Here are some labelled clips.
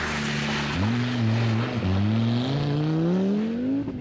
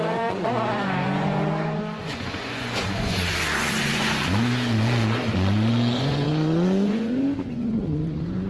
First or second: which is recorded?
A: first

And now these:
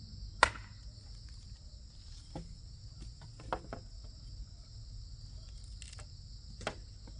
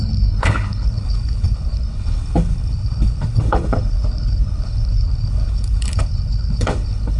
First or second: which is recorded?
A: first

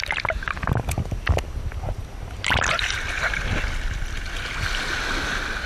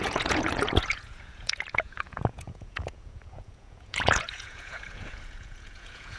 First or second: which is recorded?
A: first